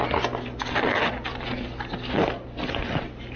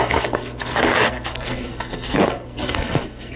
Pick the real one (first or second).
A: first